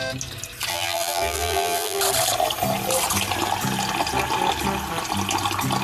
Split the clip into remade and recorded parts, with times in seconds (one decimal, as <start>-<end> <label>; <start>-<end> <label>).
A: 0.0-0.7 recorded; 0.7-2.0 remade; 2.0-5.8 recorded